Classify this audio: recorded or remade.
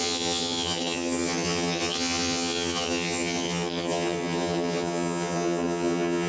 remade